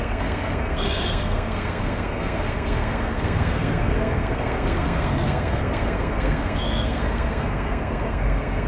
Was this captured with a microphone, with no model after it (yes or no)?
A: no